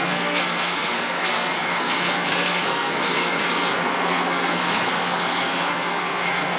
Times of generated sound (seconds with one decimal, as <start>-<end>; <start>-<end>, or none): 0.0-6.6